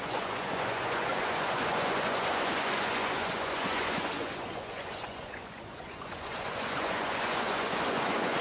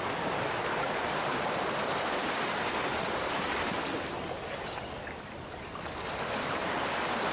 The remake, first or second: first